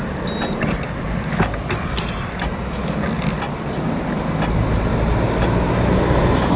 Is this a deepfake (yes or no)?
no